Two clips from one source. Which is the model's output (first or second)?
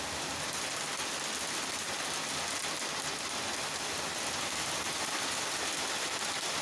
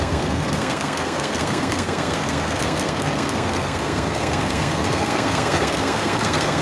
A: second